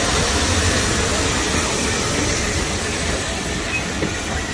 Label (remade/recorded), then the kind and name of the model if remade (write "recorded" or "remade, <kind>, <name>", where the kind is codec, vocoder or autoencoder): recorded